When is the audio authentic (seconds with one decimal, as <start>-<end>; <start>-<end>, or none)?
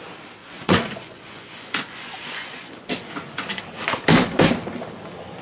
0.0-0.4; 3.6-5.4